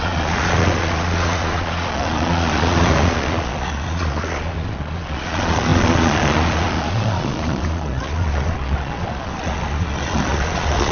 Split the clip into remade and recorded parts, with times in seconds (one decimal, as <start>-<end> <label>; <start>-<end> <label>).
0.0-10.9 remade